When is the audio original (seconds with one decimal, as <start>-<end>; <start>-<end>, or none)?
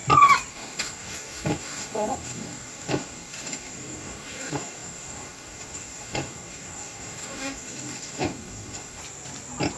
0.0-0.5; 9.0-9.8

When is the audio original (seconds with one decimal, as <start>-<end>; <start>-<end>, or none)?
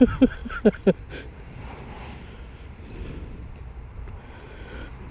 0.0-5.1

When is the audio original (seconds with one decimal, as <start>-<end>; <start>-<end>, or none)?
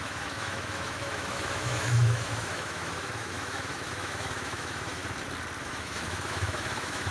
5.0-5.6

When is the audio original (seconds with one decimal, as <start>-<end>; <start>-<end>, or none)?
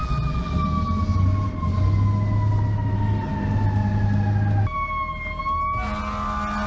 0.5-6.7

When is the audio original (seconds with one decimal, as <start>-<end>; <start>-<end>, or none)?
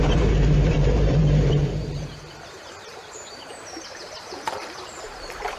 2.1-2.6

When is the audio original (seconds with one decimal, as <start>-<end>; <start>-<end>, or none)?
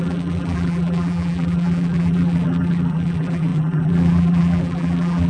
none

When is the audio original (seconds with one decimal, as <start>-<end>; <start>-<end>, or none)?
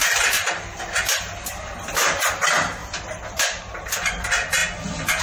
0.0-2.8; 3.6-5.2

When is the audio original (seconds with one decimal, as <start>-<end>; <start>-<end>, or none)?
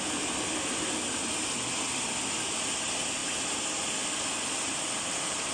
0.0-5.5